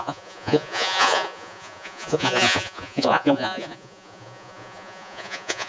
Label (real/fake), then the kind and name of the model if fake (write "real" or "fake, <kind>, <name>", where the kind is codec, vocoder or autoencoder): fake, vocoder, Vocos